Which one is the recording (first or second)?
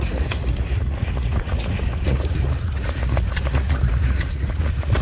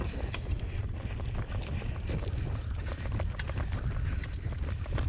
second